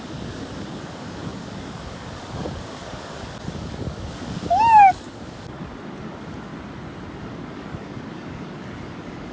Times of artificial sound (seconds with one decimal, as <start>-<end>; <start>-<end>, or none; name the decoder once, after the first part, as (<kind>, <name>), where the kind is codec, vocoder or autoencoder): 0.0-6.5 (codec, DAC); 7.1-9.3